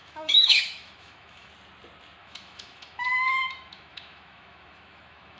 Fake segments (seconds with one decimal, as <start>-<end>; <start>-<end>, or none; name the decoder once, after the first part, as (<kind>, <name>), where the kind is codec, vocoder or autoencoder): 0.0-1.5 (autoencoder, DAC-VAE); 2.2-5.4